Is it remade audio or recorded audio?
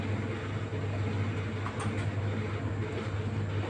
recorded